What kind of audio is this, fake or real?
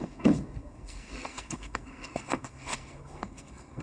fake